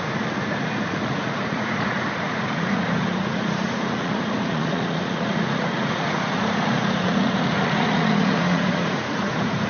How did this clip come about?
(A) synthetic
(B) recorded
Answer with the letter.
A